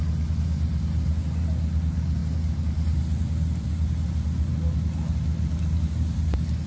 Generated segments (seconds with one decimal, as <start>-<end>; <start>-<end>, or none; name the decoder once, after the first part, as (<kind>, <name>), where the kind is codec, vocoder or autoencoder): none